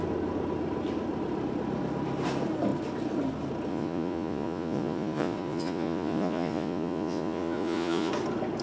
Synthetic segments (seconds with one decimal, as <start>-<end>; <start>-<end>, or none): 3.7-8.1